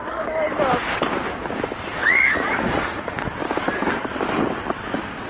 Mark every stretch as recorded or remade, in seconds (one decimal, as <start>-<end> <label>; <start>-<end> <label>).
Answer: 0.0-1.9 recorded; 1.9-3.3 remade; 3.3-5.3 recorded